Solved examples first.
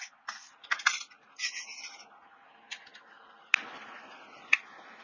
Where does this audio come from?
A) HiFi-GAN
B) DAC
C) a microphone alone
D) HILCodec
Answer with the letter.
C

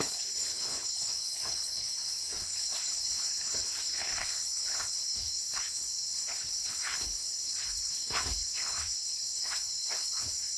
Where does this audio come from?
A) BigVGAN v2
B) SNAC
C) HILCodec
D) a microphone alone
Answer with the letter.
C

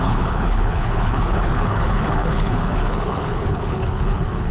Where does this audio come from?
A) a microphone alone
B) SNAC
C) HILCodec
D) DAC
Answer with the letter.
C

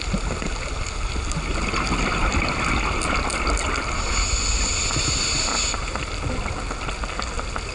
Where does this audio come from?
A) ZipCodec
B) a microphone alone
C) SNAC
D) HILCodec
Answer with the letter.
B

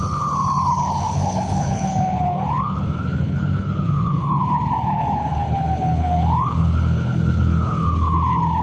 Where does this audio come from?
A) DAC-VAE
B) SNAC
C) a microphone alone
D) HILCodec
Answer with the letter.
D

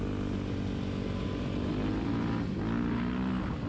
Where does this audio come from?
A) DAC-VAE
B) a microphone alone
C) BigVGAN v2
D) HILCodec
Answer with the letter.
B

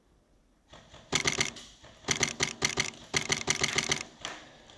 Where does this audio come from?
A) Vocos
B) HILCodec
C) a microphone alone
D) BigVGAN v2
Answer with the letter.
C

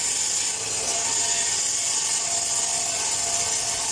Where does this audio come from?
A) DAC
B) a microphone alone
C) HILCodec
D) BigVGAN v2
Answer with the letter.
B